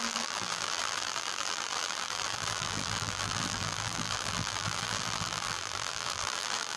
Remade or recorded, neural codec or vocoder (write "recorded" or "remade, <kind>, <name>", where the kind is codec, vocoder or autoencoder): remade, vocoder, BigVGAN v2